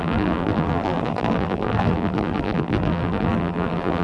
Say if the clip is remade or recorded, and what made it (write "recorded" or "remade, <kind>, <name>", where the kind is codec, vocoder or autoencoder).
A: remade, vocoder, BigVGAN v2